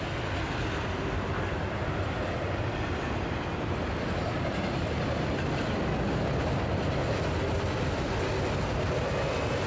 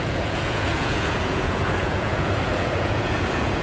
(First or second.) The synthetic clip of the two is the second